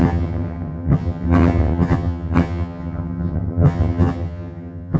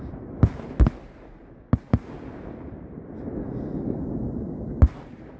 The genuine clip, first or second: second